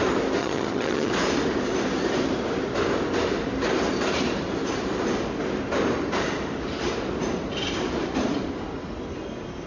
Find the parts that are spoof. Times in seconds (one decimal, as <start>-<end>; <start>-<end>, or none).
0.4-1.1